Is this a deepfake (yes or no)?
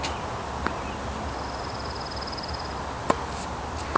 no